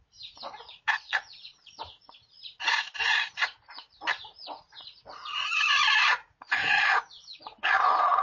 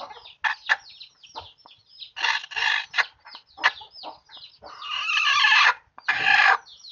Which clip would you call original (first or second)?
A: second